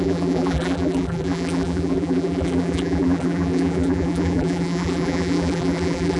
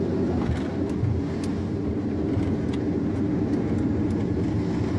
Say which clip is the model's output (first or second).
first